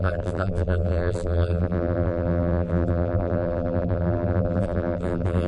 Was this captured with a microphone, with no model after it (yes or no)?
no